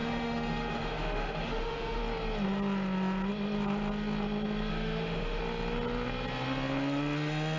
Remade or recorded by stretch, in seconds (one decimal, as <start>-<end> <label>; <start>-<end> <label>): 0.0-2.0 remade; 2.0-4.7 recorded; 4.7-5.4 remade; 5.4-7.6 recorded